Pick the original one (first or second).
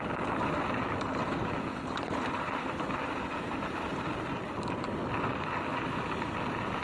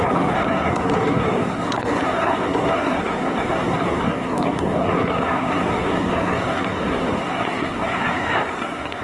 first